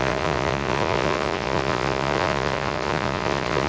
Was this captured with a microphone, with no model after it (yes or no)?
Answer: no